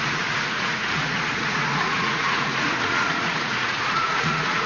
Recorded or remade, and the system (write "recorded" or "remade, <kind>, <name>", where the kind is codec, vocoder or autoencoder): remade, vocoder, Vocos